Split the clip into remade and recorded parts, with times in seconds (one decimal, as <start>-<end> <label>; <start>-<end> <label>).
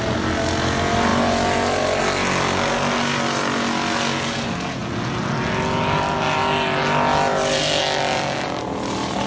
0.0-9.3 recorded